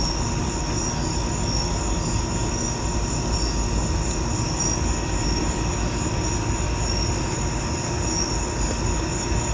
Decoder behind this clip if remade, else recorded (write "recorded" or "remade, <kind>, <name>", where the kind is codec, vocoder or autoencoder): recorded